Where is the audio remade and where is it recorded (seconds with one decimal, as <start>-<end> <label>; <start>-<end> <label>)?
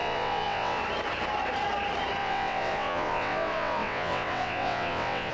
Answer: 0.0-0.8 remade; 0.8-2.2 recorded; 2.2-5.3 remade